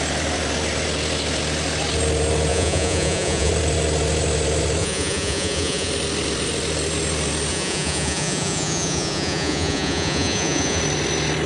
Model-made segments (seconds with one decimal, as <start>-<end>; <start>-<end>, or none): 2.5-3.5; 4.8-5.9; 7.5-10.8